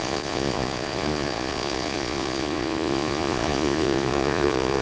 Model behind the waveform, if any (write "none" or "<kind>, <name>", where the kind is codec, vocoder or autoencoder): vocoder, Vocos